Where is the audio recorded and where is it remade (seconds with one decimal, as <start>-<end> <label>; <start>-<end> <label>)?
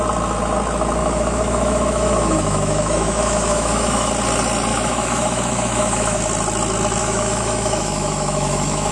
0.0-1.0 recorded; 1.0-4.1 remade; 4.1-4.7 recorded; 4.7-6.2 remade; 6.2-7.0 recorded; 7.0-8.9 remade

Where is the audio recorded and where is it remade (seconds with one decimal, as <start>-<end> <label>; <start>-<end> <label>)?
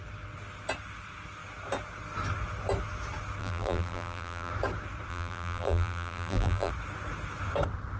0.0-3.4 recorded; 3.4-4.5 remade; 4.5-5.1 recorded; 5.1-6.7 remade; 6.7-8.0 recorded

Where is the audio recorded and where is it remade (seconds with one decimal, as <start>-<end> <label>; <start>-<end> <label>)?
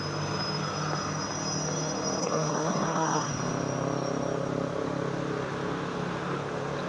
0.0-2.2 recorded; 2.2-3.3 remade; 3.3-6.9 recorded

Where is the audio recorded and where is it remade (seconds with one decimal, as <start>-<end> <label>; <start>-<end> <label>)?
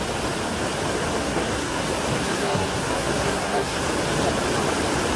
0.0-1.2 recorded; 1.2-1.8 remade; 1.8-2.2 recorded; 2.2-3.8 remade; 3.8-5.2 recorded